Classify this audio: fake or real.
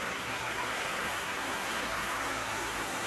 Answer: fake